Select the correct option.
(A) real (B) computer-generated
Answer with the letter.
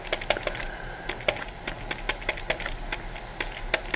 A